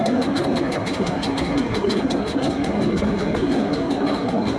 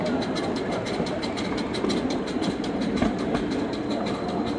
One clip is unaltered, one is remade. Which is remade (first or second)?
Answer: first